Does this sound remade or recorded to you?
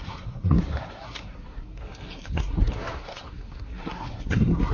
remade